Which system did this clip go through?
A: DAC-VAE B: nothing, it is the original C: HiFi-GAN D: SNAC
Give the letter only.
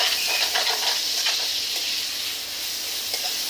B